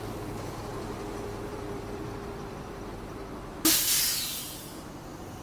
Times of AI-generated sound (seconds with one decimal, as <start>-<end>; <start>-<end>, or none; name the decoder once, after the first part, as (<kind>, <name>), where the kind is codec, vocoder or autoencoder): 0.0-5.4 (vocoder, BigVGAN v2)